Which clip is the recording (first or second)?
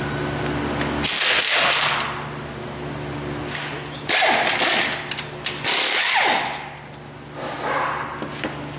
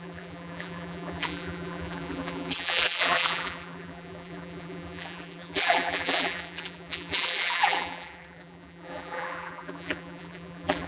first